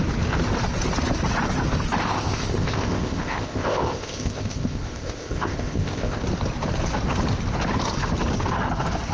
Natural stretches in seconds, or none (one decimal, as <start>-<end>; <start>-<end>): 0.0-2.0; 6.2-9.1